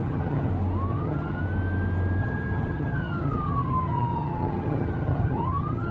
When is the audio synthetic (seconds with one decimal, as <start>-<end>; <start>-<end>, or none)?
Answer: 0.0-0.5; 0.9-1.4; 2.2-5.9